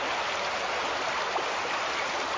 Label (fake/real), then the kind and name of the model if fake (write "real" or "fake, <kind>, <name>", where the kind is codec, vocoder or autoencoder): real